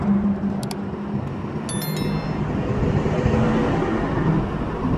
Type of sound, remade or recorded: recorded